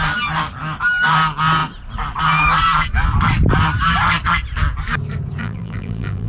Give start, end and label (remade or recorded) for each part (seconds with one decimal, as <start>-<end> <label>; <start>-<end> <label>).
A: 0.0-5.4 recorded; 5.4-6.3 remade